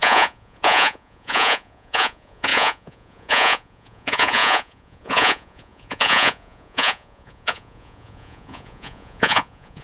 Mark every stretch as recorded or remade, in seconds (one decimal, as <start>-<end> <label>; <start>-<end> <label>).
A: 0.0-9.8 remade

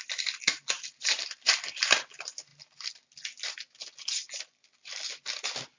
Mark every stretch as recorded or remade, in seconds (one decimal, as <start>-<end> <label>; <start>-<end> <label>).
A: 0.0-5.8 recorded

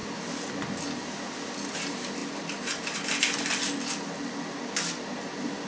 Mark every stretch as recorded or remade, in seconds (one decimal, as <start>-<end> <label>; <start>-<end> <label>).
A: 0.0-5.7 recorded

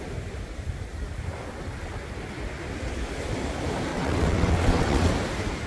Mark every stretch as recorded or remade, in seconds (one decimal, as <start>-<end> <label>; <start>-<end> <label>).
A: 0.0-3.9 recorded; 3.9-5.1 remade; 5.1-5.7 recorded

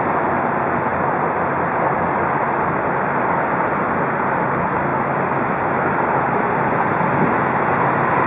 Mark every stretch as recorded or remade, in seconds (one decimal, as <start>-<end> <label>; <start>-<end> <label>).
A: 0.0-8.3 recorded